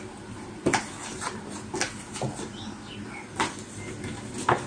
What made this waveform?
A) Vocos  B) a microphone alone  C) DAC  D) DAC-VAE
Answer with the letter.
B